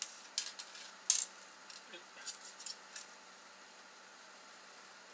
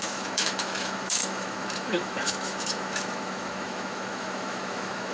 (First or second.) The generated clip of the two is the second